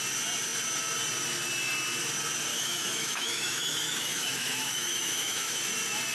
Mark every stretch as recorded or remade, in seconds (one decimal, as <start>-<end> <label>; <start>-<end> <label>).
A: 0.0-2.5 recorded; 2.5-5.6 remade; 5.6-6.1 recorded